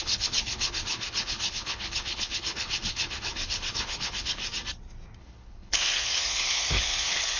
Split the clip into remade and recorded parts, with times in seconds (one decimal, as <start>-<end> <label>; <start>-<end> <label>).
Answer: 0.0-4.4 remade; 4.4-5.2 recorded; 5.2-7.4 remade